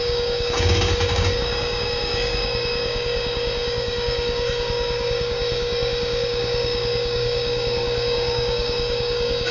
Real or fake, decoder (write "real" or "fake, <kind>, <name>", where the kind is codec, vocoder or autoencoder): fake, codec, DAC